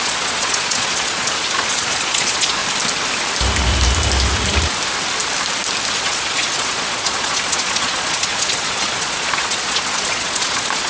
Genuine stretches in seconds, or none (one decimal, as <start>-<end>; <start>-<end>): 2.6-5.9